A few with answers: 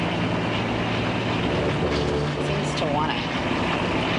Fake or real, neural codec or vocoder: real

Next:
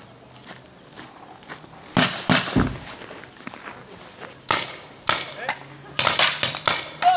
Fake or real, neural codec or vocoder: real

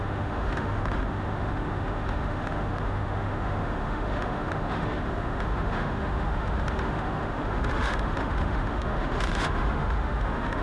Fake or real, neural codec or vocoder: fake, autoencoder, DAC-VAE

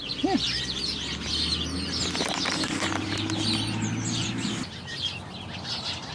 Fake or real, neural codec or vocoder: real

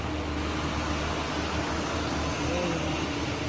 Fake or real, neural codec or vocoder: real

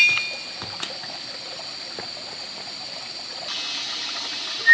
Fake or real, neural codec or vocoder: real